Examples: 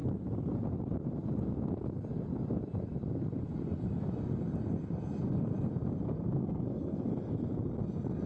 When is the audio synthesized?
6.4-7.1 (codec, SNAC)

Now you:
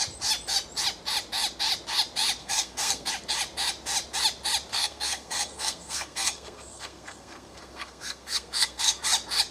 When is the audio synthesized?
2.4-3.1 (codec, SNAC); 4.7-9.0

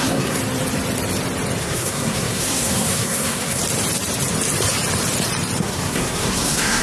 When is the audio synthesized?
0.0-0.4 (codec, SNAC); 1.6-3.6; 5.6-6.8

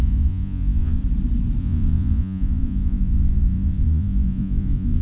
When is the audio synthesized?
0.0-1.0 (vocoder, Vocos); 1.6-5.0

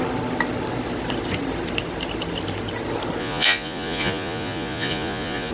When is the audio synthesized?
3.2-5.5 (vocoder, Vocos)